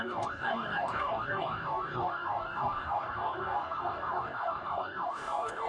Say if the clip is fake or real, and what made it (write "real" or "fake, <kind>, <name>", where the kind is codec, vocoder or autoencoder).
fake, codec, DAC